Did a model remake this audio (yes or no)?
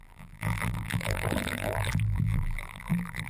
yes